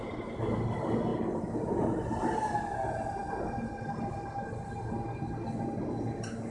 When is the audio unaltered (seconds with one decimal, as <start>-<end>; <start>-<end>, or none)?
0.0-6.5